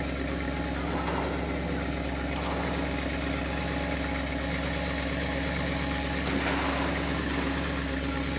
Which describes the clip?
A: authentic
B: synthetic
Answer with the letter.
A